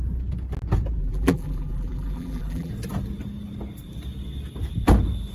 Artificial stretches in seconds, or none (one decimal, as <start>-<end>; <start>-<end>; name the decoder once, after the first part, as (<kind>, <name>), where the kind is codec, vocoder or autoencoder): 1.0-2.7 (vocoder, BigVGAN v2)